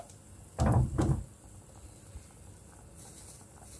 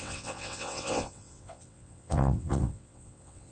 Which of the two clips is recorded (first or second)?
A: first